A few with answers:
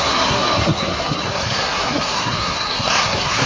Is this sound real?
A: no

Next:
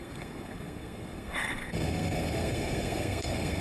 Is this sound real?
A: no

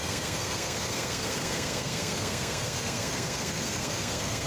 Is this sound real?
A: no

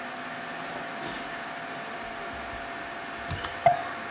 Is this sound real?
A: yes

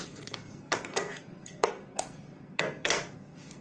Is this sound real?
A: no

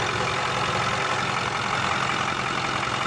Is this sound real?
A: yes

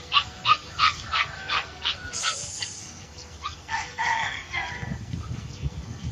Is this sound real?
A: no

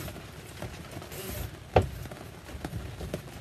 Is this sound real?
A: yes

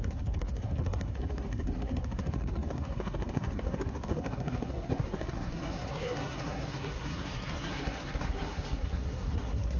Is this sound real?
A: no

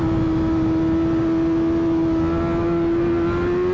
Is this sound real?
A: yes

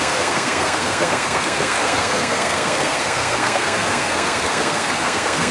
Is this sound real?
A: no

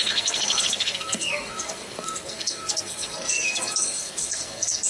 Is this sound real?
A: no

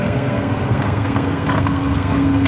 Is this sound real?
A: no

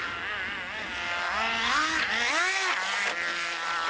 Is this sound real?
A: yes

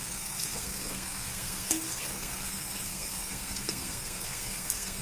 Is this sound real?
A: no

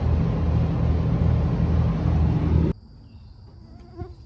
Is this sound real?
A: yes